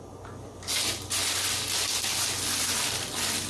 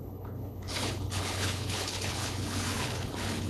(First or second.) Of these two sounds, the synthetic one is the second